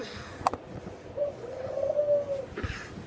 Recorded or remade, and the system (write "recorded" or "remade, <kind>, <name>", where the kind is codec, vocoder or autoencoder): recorded